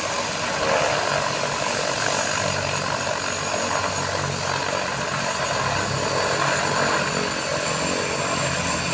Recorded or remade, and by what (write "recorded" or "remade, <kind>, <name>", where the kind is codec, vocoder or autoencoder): recorded